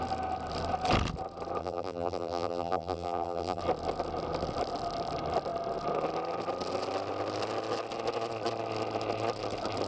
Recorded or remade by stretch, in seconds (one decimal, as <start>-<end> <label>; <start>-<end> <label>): 0.0-1.6 recorded; 1.6-3.6 remade; 3.6-9.9 recorded